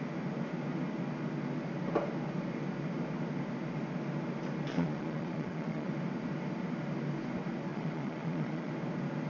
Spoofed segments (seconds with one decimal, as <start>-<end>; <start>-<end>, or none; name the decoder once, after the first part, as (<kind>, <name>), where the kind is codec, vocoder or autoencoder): 4.7-5.9 (vocoder, Vocos); 7.7-8.7